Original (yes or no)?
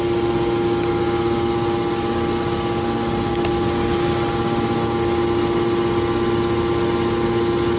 yes